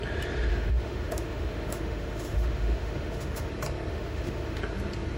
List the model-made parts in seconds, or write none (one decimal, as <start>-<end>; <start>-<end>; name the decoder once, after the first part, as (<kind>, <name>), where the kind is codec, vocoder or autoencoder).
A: 0.5-3.5 (autoencoder, DAC-VAE); 3.9-4.6